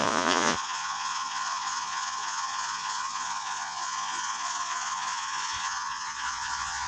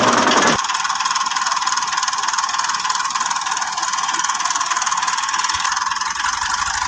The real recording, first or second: second